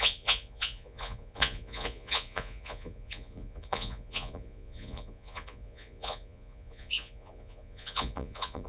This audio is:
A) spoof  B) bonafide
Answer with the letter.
A